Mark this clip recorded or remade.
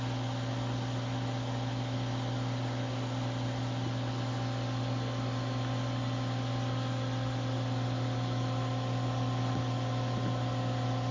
recorded